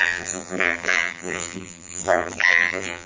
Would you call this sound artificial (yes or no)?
yes